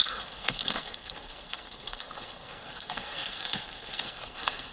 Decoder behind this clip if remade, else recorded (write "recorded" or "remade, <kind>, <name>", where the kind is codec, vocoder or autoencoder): remade, codec, SNAC